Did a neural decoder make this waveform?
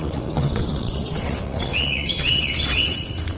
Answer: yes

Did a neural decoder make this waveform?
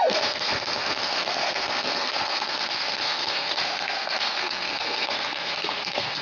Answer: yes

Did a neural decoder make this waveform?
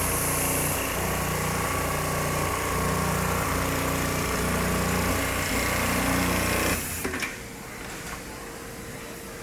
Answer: no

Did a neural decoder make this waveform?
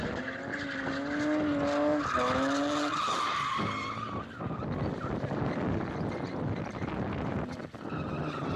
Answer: no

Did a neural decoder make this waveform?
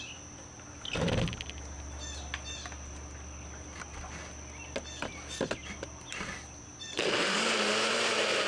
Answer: no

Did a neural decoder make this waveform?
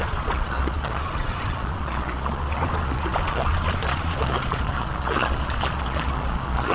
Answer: yes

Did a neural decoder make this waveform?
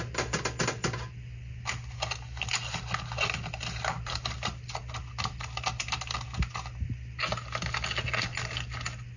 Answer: no